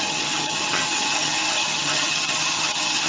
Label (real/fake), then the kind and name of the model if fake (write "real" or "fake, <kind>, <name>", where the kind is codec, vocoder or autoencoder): fake, vocoder, HiFi-GAN